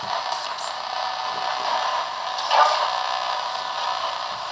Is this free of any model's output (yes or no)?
yes